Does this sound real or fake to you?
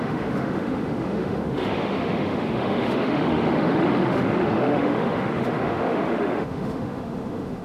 fake